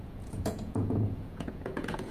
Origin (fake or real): fake